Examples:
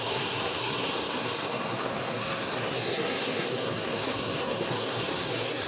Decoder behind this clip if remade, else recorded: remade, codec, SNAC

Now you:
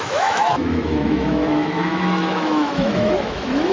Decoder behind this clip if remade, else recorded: remade, autoencoder, DAC-VAE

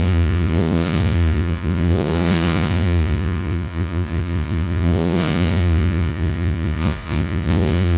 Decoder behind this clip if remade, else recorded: remade, vocoder, Vocos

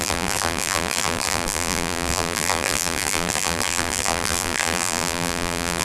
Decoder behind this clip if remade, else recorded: remade, vocoder, BigVGAN v2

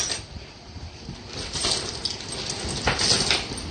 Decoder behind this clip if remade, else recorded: recorded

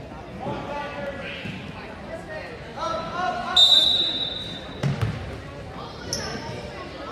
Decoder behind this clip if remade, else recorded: recorded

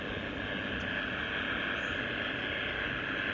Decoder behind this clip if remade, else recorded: recorded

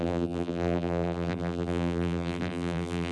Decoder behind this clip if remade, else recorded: remade, vocoder, BigVGAN v2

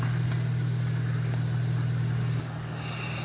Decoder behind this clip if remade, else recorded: recorded